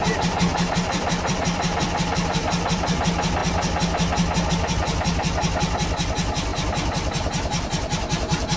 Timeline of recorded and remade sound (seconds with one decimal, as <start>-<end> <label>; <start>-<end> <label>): 0.0-0.5 recorded; 0.5-3.0 remade; 3.0-8.6 recorded